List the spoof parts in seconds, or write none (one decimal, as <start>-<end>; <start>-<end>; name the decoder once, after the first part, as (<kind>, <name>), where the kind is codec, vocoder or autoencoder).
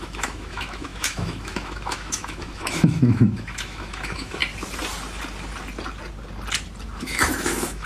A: 0.0-4.4 (autoencoder, DAC-VAE); 7.0-7.9